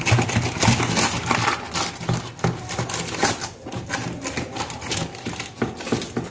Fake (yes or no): no